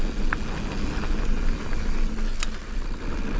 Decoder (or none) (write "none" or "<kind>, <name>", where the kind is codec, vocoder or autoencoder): none